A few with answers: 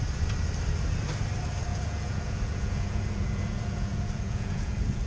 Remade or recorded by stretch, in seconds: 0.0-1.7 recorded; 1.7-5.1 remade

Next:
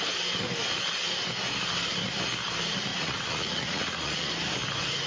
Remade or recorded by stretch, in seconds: 0.0-2.9 recorded; 2.9-4.3 remade; 4.3-5.1 recorded

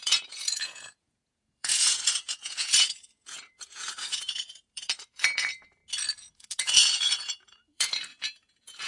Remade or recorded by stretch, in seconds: 0.0-5.8 remade; 5.8-6.3 recorded; 6.3-8.9 remade

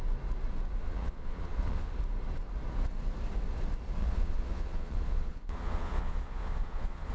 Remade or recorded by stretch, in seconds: 0.0-0.8 recorded; 0.8-1.9 remade; 1.9-4.0 recorded; 4.0-7.1 remade

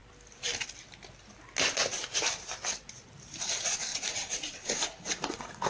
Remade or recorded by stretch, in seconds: 0.0-3.4 recorded; 3.4-5.7 remade

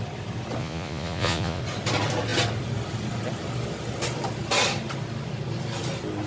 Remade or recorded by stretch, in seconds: 0.0-0.6 recorded; 0.6-1.6 remade; 1.6-6.3 recorded